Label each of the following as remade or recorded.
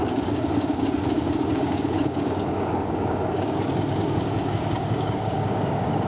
remade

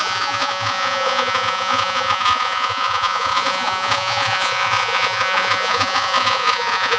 remade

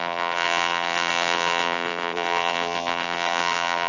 remade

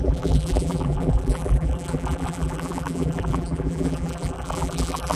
remade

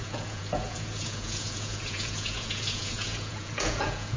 remade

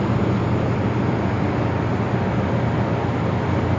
recorded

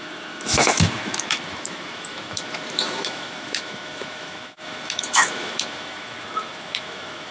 remade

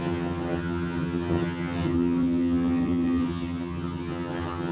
remade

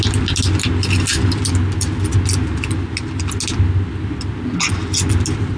recorded